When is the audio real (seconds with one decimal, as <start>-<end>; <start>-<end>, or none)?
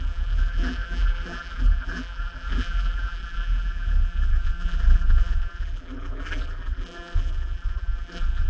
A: none